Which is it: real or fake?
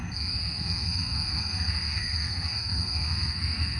fake